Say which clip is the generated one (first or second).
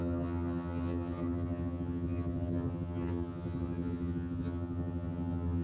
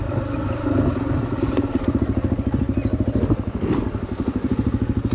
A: first